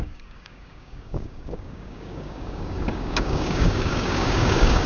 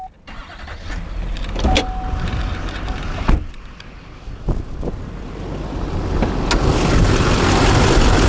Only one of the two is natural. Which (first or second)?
second